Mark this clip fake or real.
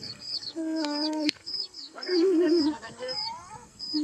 fake